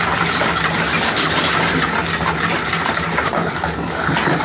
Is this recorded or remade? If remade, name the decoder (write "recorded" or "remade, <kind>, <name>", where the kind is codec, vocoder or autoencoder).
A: recorded